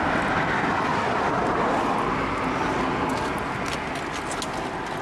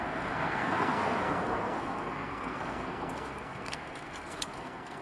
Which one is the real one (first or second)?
first